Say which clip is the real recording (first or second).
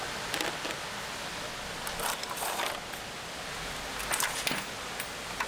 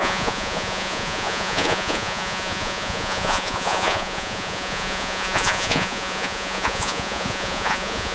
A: first